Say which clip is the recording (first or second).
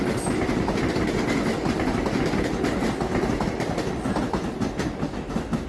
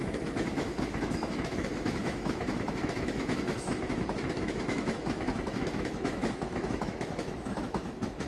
first